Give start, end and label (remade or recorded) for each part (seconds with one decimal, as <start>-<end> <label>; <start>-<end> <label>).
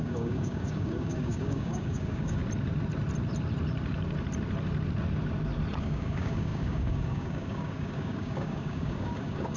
0.0-2.4 remade; 2.4-5.8 recorded; 5.8-9.6 remade